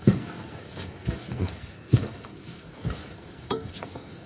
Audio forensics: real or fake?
fake